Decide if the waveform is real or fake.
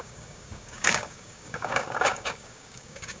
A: fake